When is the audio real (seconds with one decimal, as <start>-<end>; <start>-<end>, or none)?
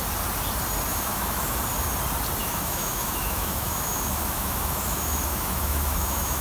0.0-0.9; 1.6-2.4